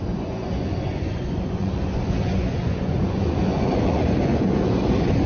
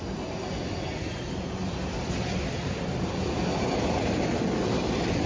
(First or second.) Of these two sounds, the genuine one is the second